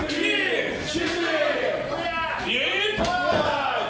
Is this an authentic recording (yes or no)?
yes